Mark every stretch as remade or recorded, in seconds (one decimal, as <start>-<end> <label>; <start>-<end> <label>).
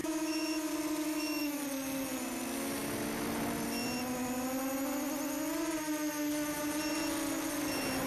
0.0-0.7 remade; 0.7-1.1 recorded; 1.1-1.6 remade; 1.6-8.1 recorded